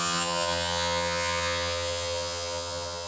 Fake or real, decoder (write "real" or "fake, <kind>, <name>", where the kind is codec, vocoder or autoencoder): fake, vocoder, HiFi-GAN